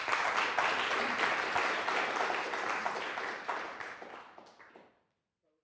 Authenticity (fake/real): real